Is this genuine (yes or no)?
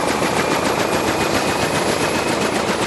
yes